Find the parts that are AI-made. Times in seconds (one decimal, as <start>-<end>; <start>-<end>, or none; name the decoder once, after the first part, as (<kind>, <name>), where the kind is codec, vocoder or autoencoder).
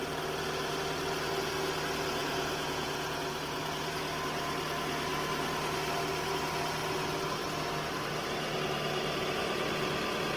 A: 2.2-3.6 (vocoder, Vocos)